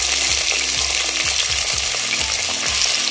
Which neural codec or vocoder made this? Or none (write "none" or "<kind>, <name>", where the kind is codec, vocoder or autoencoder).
none